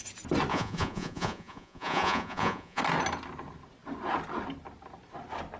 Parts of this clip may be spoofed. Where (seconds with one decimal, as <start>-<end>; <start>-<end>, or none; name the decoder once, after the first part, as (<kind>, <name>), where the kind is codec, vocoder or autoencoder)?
0.5-2.8 (vocoder, Vocos)